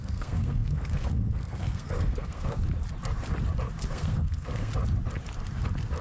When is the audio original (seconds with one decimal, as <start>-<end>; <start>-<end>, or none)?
2.6-3.9; 4.7-6.0